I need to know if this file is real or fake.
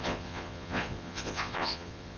fake